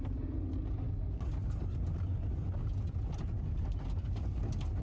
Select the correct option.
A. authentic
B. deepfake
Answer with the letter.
A